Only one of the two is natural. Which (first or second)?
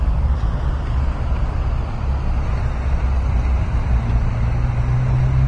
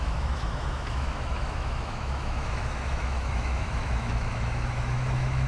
first